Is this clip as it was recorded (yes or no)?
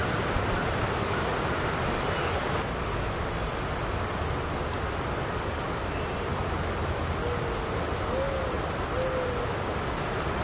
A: yes